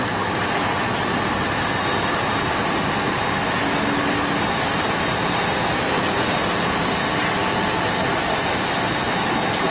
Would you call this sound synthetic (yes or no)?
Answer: no